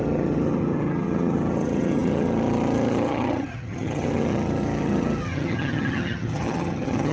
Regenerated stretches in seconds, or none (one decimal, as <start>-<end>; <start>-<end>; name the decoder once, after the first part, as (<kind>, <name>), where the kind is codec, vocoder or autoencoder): 0.0-7.1 (vocoder, HiFi-GAN)